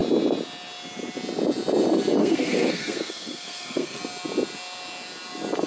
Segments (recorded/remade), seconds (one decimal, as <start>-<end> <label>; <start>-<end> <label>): 0.0-2.2 recorded; 2.2-4.0 remade; 4.0-5.7 recorded